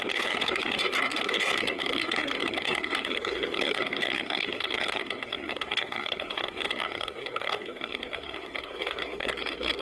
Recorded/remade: remade